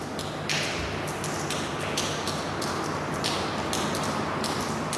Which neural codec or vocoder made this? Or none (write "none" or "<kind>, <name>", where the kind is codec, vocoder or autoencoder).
none